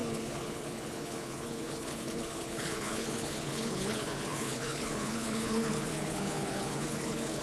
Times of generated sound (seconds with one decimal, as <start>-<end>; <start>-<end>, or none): 0.0-7.4